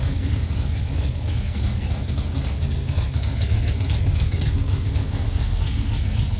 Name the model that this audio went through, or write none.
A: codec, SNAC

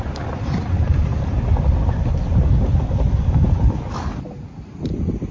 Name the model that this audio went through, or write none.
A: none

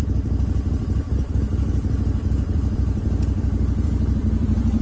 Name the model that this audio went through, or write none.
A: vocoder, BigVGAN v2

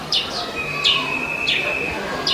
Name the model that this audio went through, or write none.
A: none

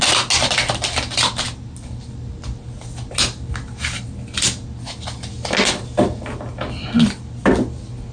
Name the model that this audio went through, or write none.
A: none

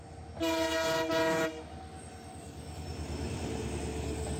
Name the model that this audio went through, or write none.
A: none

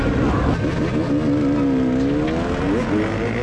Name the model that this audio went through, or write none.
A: none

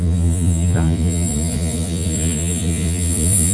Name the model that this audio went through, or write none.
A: vocoder, Vocos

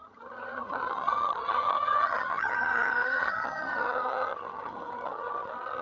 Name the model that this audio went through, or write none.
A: vocoder, HiFi-GAN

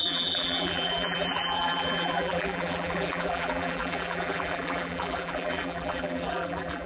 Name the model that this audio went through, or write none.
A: vocoder, BigVGAN v2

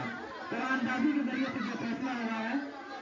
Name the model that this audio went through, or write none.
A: none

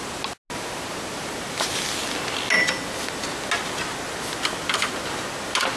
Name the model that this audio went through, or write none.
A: none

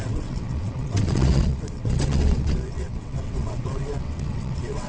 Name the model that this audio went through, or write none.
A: vocoder, WaveNeXt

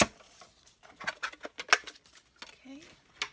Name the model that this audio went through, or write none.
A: none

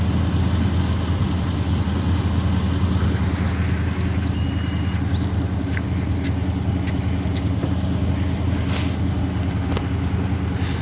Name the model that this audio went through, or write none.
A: none